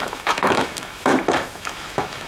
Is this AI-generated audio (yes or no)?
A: yes